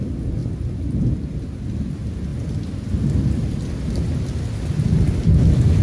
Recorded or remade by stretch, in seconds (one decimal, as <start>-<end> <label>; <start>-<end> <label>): 0.0-5.8 recorded

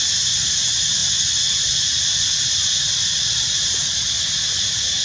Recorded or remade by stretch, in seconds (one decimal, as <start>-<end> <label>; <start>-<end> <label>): 0.0-5.0 recorded

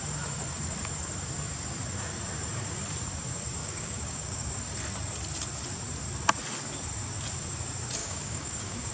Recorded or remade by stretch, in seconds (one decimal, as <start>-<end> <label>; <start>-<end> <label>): 0.0-3.6 recorded; 3.6-4.5 remade; 4.5-8.0 recorded; 8.0-8.9 remade

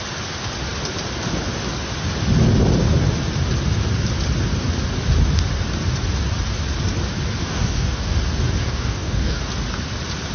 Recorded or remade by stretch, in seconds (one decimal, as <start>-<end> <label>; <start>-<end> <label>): 0.0-7.4 recorded; 7.4-8.2 remade; 8.2-8.6 recorded; 8.6-9.4 remade; 9.4-10.3 recorded

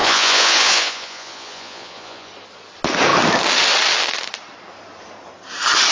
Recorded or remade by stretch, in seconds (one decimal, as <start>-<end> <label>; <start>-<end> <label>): 0.0-2.3 remade; 2.3-5.9 recorded

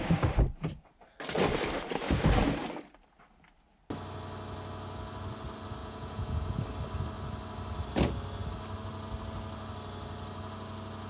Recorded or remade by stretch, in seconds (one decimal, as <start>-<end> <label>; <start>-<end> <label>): 0.0-5.8 recorded; 5.8-6.6 remade; 6.6-11.1 recorded

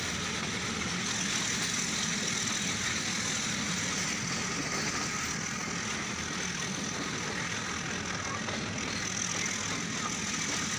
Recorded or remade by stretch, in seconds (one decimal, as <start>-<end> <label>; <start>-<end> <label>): 0.0-10.8 recorded